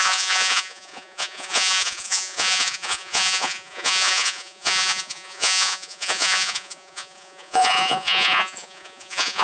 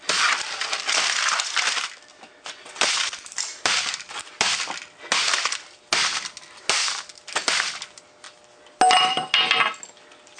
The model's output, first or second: first